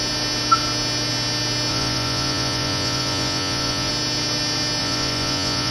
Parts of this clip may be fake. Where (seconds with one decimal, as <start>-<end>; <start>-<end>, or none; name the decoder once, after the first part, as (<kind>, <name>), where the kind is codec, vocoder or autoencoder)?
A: 1.7-3.9 (vocoder, Vocos); 4.8-5.7